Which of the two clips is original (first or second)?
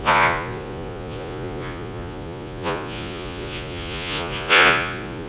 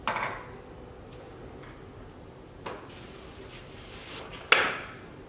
second